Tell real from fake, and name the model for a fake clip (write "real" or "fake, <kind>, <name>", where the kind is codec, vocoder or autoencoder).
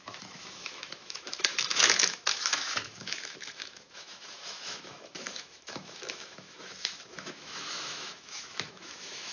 fake, autoencoder, DAC-VAE